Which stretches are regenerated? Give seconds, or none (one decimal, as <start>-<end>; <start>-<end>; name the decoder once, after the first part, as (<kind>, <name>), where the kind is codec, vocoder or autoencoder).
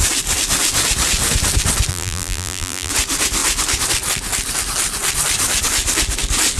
1.9-2.9 (vocoder, BigVGAN v2)